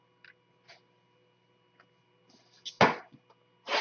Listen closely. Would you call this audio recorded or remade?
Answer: recorded